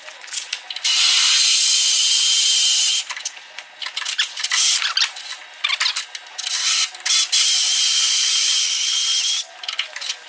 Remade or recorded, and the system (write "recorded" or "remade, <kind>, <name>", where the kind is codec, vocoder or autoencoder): recorded